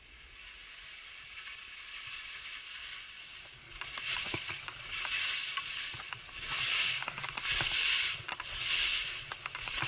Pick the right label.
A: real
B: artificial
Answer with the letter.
A